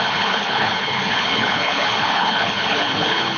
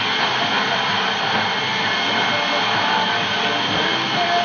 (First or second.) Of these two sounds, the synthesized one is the first